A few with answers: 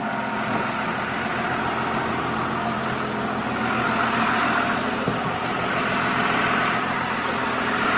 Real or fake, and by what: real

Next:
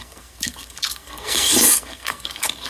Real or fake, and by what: fake, codec, SNAC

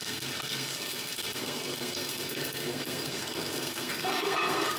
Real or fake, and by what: fake, codec, SNAC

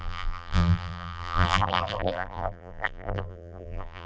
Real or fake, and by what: fake, vocoder, BigVGAN v2